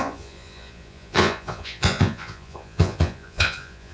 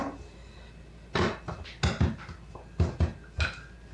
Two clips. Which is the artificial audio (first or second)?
first